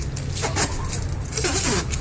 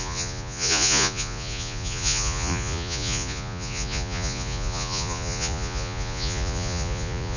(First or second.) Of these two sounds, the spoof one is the second